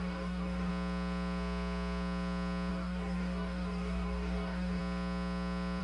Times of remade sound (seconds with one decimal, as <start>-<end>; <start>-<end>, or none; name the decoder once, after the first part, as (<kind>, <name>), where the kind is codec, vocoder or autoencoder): 0.0-0.7 (codec, DAC); 2.7-4.8